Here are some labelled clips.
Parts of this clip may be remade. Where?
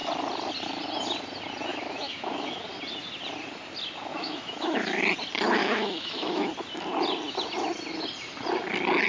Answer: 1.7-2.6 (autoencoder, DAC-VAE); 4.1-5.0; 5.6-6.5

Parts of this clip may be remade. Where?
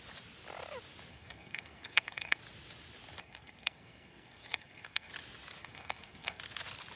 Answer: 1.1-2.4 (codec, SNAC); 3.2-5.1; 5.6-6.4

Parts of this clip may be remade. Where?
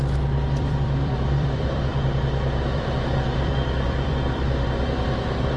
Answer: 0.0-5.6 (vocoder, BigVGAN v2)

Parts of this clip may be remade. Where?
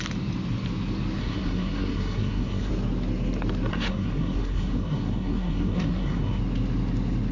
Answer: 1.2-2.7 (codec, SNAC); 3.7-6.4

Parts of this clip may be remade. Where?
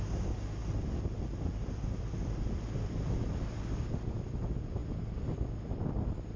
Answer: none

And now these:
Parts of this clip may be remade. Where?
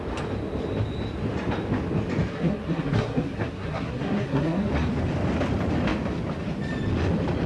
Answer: 2.3-4.7 (codec, SNAC)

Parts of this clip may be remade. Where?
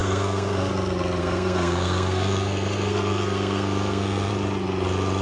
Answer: 0.0-0.7 (codec, SNAC); 1.2-4.3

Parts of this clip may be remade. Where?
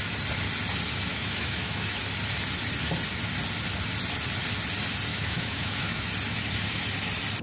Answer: 1.1-2.0 (autoencoder, DAC-VAE); 5.1-6.1